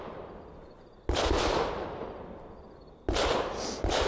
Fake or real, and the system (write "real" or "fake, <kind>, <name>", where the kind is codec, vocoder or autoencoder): real